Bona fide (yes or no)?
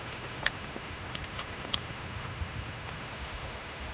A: no